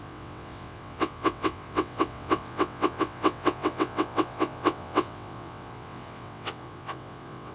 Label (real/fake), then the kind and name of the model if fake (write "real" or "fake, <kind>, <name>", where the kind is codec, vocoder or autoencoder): fake, vocoder, WaveNeXt